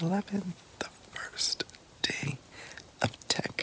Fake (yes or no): yes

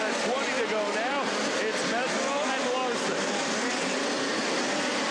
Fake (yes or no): no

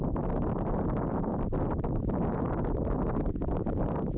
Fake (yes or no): yes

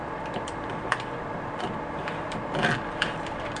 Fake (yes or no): yes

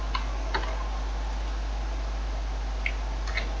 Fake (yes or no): no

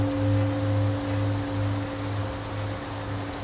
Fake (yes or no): no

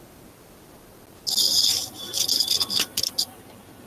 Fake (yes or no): no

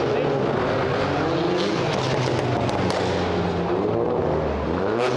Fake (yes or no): no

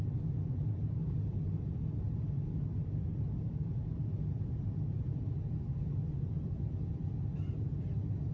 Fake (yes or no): no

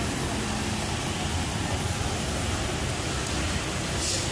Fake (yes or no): no